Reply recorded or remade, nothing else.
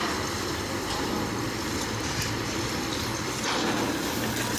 recorded